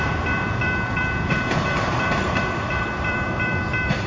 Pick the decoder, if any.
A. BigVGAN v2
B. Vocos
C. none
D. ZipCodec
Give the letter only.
A